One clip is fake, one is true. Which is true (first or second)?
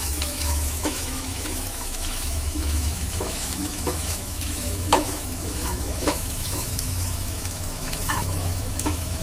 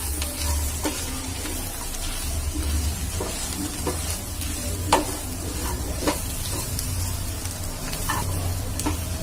second